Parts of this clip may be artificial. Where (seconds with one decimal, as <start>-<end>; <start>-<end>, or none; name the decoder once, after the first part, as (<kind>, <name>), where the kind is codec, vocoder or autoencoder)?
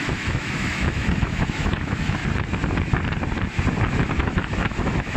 0.0-2.2 (autoencoder, DAC-VAE); 3.9-5.2